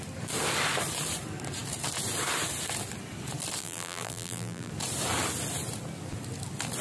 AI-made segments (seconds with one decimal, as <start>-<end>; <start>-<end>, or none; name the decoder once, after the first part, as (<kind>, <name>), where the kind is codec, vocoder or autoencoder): 3.6-4.7 (vocoder, BigVGAN v2)